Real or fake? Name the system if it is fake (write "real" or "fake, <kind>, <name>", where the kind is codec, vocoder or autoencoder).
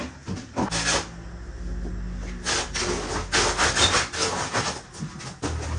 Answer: real